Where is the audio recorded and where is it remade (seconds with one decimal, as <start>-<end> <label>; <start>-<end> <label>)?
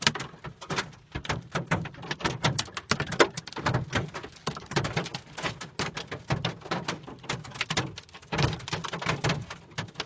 0.0-5.1 remade; 5.1-6.0 recorded; 6.0-10.1 remade